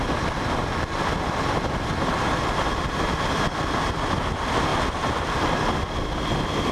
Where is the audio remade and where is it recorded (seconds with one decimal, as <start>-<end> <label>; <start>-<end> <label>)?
0.0-6.7 recorded